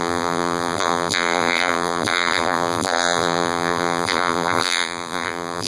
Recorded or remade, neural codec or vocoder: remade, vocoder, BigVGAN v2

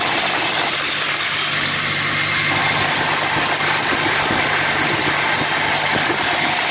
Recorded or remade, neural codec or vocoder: recorded